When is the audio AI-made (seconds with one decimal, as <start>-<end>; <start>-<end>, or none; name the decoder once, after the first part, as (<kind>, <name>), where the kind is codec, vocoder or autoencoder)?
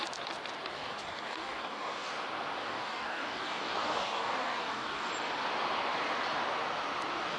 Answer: 0.7-2.1 (codec, DAC); 2.6-5.1